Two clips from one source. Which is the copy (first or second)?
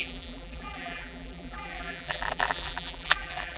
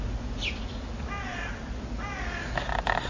first